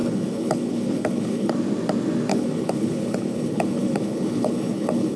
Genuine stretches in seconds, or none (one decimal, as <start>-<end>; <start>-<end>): 1.5-2.3